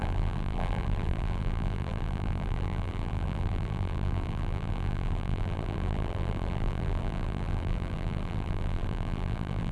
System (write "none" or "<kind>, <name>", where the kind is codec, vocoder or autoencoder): vocoder, BigVGAN v2